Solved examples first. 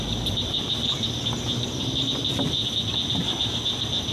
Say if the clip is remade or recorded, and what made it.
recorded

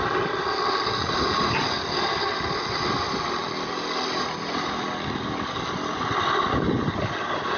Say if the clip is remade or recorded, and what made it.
recorded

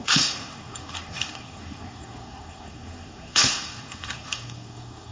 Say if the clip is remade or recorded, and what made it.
remade, codec, SNAC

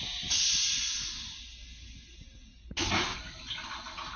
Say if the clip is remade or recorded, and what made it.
recorded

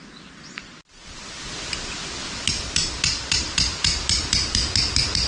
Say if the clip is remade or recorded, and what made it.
recorded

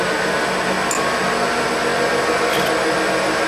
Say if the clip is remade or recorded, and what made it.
recorded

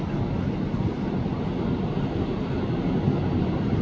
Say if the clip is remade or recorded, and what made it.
recorded